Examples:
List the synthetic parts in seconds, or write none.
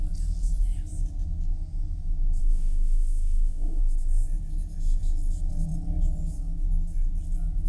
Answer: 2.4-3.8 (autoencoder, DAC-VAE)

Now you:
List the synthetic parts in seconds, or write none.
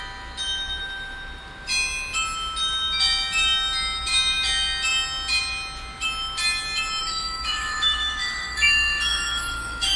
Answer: 7.0-10.0 (autoencoder, DAC-VAE)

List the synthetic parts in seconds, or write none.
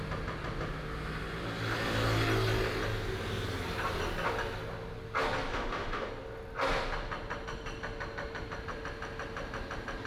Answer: 5.5-6.1 (autoencoder, DAC-VAE)